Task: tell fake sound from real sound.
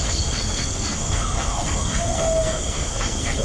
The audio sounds fake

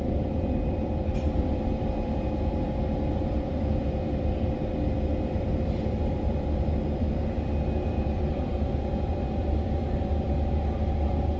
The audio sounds fake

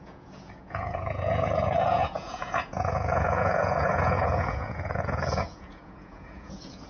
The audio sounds fake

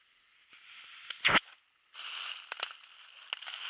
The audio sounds real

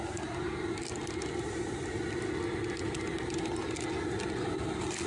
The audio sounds real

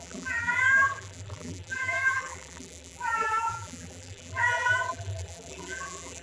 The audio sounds fake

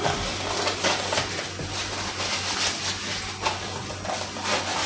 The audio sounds real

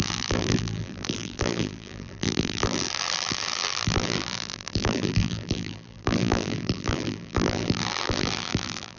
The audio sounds fake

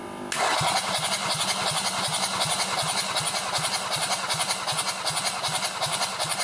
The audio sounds real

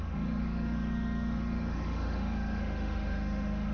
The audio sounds fake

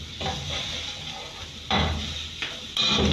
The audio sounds fake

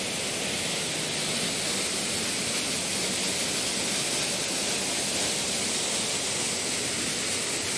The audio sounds real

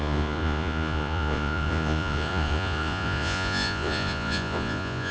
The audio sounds fake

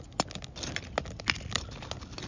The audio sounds real